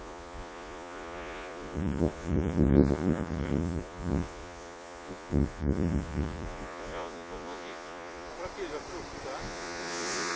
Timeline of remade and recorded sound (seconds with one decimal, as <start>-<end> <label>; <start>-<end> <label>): 0.0-8.3 remade; 8.3-9.4 recorded; 9.4-10.4 remade